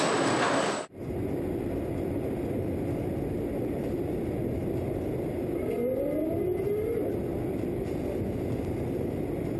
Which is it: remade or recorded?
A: recorded